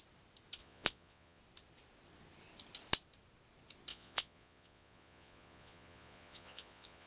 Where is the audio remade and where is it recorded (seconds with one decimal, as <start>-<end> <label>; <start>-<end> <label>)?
0.0-0.6 recorded; 0.6-1.4 remade; 1.4-3.9 recorded; 3.9-7.1 remade